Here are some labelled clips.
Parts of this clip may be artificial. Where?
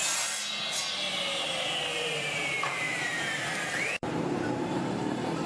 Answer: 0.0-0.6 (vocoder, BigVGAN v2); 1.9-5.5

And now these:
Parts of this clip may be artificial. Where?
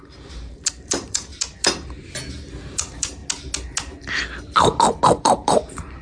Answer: 0.0-1.3 (vocoder, BigVGAN v2); 2.6-3.2; 5.2-6.0